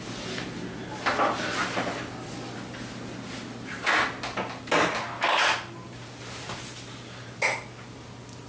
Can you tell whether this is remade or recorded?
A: recorded